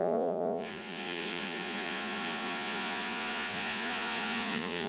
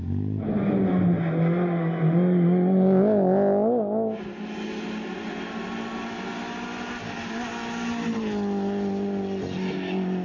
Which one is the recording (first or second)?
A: second